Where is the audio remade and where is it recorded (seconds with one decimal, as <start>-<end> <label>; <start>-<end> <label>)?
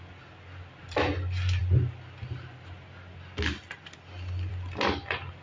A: 0.0-5.4 recorded